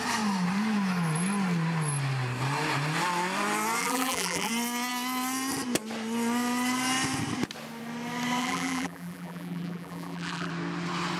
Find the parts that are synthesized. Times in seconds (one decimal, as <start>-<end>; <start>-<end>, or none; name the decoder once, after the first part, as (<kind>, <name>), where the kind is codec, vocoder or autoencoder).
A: 3.8-4.5 (vocoder, BigVGAN v2); 8.4-10.5